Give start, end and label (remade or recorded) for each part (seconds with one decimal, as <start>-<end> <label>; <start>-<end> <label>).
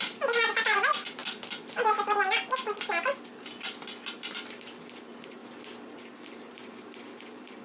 0.0-1.2 remade; 1.2-5.0 recorded; 5.0-5.4 remade; 5.4-6.0 recorded; 6.0-7.6 remade